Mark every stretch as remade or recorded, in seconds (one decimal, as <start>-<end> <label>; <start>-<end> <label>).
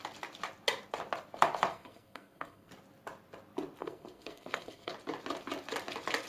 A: 0.0-1.7 recorded; 1.7-2.7 remade; 2.7-3.8 recorded; 3.8-4.9 remade; 4.9-6.3 recorded